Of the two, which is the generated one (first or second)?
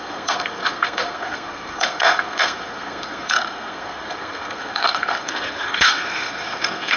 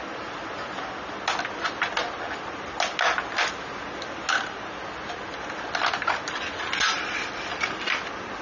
first